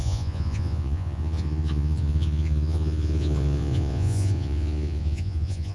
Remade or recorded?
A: remade